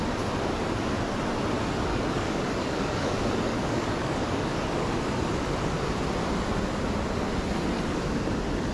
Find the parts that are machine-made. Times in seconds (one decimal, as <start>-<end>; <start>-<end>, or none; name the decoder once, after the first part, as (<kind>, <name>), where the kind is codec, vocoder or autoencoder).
1.9-5.1 (codec, DAC)